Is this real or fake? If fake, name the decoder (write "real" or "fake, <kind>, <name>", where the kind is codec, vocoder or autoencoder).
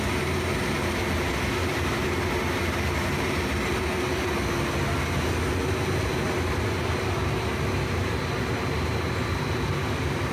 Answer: real